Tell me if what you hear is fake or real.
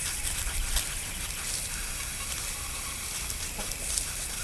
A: real